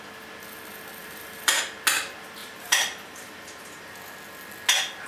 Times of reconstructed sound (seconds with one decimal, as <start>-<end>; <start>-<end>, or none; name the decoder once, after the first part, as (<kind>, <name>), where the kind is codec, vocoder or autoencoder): 1.0-1.6 (vocoder, BigVGAN v2); 2.4-3.9